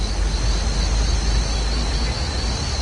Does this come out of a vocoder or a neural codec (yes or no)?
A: no